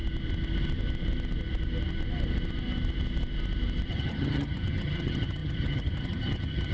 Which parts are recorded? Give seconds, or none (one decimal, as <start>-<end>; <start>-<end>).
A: 0.0-3.9